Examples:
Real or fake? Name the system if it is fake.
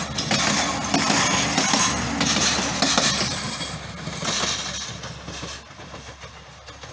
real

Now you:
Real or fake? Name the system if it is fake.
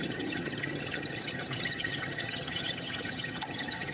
fake, vocoder, HiFi-GAN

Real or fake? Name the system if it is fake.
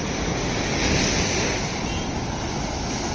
real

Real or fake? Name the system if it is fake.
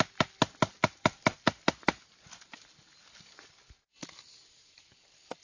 real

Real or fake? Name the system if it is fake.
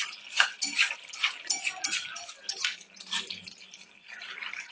real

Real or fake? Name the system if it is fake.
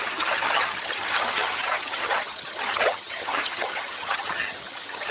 fake, vocoder, HiFi-GAN